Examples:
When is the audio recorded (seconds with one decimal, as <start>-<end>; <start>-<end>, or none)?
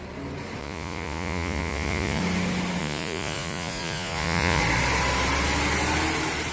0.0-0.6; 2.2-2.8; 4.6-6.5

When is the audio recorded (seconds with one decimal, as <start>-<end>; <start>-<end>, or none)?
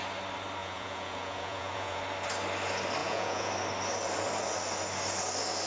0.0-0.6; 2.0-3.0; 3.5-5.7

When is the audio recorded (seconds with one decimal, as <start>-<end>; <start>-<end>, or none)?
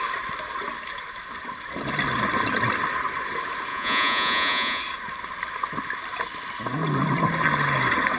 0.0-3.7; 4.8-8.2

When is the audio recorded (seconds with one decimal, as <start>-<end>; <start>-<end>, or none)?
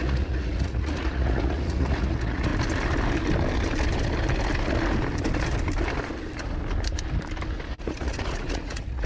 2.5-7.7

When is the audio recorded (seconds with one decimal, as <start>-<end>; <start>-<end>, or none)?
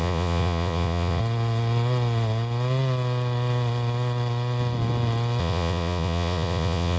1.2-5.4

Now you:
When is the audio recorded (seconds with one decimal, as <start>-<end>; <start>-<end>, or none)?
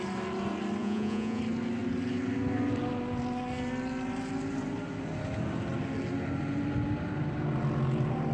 0.0-0.8; 1.4-8.3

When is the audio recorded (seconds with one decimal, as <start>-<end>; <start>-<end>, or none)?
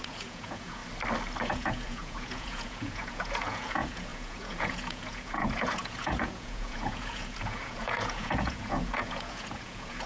0.8-1.4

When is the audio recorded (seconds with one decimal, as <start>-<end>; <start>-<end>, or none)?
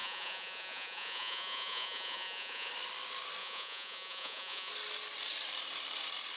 2.7-3.4; 4.7-6.4